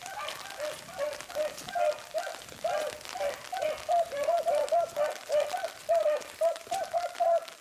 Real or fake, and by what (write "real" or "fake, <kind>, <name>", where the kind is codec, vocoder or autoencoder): real